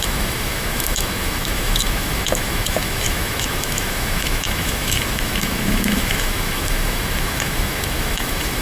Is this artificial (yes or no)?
yes